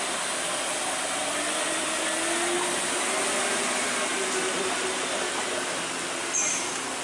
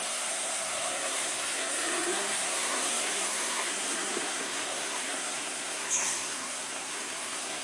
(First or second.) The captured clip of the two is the first